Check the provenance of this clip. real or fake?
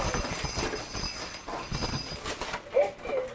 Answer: real